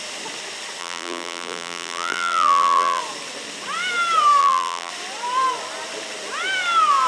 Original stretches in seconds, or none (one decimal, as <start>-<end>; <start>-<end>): 0.0-0.8; 3.0-4.4; 4.9-7.1